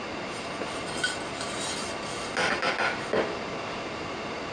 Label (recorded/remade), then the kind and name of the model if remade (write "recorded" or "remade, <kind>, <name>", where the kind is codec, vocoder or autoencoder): recorded